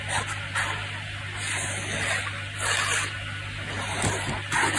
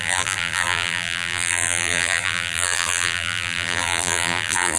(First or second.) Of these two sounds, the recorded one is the first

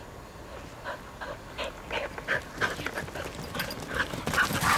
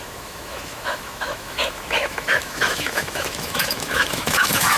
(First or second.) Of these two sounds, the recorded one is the first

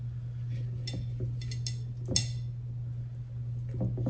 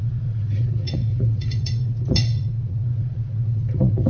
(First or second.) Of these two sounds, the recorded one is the first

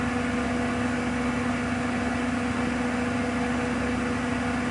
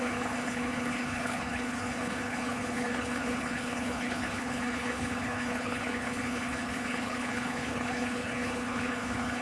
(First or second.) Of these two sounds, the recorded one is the first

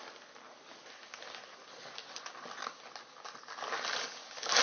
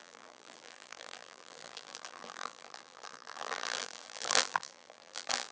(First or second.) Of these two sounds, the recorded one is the first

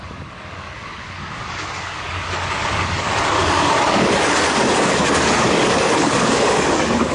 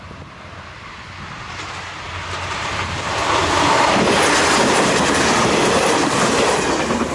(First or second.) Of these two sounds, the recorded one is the second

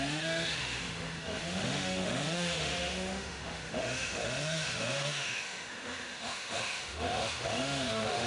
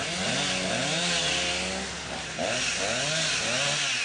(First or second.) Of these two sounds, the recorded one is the second